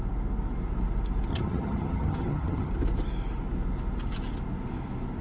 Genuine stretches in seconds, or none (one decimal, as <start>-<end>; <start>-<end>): 0.0-1.3; 2.7-5.2